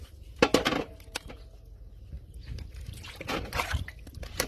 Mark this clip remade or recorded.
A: recorded